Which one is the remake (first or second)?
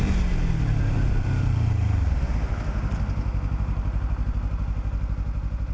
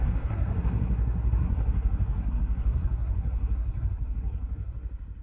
second